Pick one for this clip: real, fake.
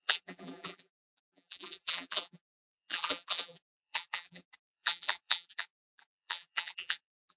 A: fake